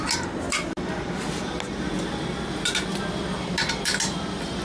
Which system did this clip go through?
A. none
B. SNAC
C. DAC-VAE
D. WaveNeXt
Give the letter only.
A